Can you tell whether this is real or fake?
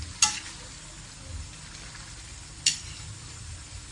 real